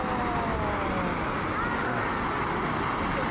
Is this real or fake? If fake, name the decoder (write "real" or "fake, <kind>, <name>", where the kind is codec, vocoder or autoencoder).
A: real